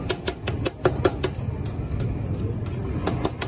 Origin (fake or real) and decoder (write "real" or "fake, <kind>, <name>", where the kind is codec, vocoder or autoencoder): real